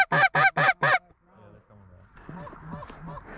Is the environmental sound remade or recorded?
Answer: recorded